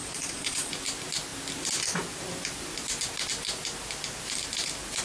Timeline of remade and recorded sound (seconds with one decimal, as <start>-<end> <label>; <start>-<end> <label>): 0.0-0.7 remade; 0.7-5.0 recorded